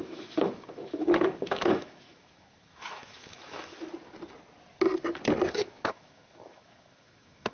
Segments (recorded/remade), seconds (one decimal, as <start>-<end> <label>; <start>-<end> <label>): 0.0-3.7 remade; 3.7-5.5 recorded; 5.5-7.5 remade